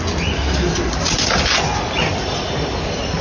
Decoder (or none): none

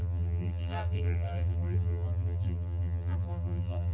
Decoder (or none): vocoder, BigVGAN v2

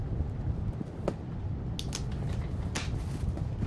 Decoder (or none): none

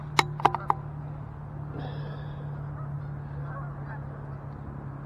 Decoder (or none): none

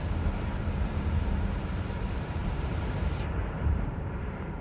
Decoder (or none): vocoder, BigVGAN v2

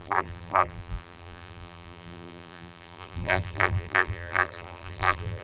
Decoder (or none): vocoder, BigVGAN v2